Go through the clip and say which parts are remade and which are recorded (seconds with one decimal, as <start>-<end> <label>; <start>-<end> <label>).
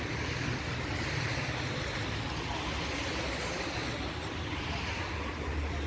0.0-5.9 recorded